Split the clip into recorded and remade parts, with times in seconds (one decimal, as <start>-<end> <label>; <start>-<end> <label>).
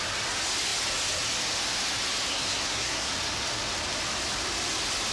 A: 0.0-2.3 recorded; 2.3-3.1 remade; 3.1-5.1 recorded